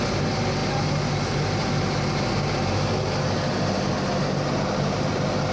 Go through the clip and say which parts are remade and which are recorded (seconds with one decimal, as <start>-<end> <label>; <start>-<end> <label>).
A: 0.0-5.5 recorded